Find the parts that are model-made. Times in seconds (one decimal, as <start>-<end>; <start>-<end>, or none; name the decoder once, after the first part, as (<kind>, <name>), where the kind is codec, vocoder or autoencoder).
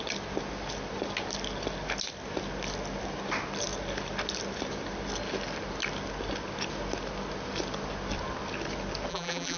9.1-9.6 (vocoder, BigVGAN v2)